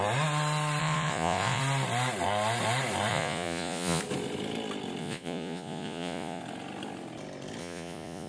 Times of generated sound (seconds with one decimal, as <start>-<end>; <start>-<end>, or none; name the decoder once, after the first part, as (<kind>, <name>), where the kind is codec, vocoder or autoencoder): 0.8-1.6 (vocoder, Vocos); 3.1-4.0; 5.0-6.4; 7.6-8.3